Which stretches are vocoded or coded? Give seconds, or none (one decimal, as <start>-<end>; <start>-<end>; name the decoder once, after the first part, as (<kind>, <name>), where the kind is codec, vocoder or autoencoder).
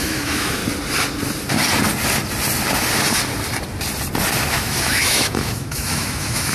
0.0-0.6 (autoencoder, DAC-VAE); 4.5-6.5